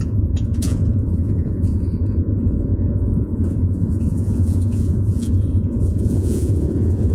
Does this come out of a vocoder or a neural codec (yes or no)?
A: yes